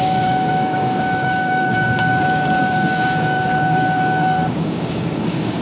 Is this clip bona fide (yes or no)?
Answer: no